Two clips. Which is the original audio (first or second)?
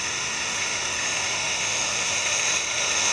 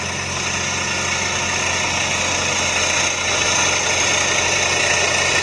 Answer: second